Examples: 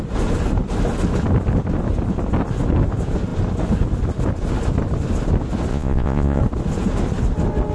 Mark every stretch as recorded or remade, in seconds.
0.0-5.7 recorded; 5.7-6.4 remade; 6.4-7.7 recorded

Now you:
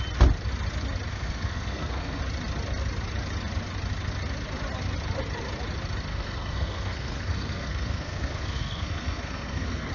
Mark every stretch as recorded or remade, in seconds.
0.0-1.1 recorded; 1.1-2.2 remade; 2.2-6.1 recorded; 6.1-9.9 remade

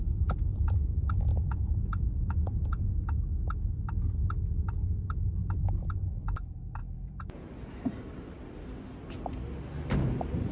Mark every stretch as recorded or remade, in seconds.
0.0-1.3 recorded; 1.3-2.9 remade; 2.9-6.8 recorded; 6.8-7.5 remade; 7.5-10.5 recorded